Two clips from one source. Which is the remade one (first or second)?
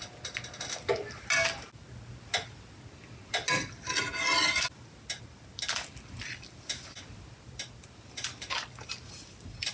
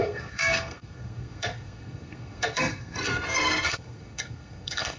second